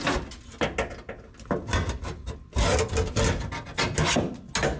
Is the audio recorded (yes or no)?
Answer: yes